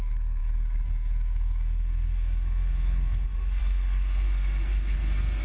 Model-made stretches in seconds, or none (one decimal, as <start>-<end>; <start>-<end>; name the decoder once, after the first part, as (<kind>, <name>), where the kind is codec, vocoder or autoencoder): 0.0-5.4 (codec, SNAC)